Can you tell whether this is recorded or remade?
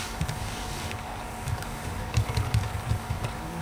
remade